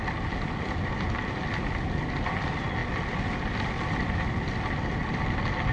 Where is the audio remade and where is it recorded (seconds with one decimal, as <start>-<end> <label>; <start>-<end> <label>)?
0.0-5.7 recorded